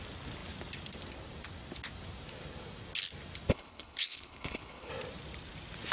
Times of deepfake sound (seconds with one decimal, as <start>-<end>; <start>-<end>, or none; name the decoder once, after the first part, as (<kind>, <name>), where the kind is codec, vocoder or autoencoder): 3.5-4.9 (codec, HILCodec)